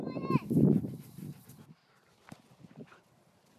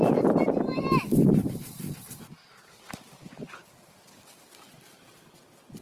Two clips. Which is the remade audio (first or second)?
second